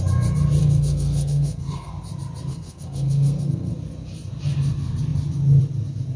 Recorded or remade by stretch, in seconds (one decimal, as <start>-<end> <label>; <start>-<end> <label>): 0.0-0.6 recorded; 0.6-1.9 remade; 1.9-2.5 recorded; 2.5-3.7 remade; 3.7-6.2 recorded